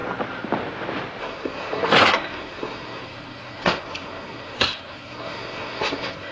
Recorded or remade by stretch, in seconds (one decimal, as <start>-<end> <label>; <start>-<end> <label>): 0.0-1.2 recorded; 1.2-6.3 remade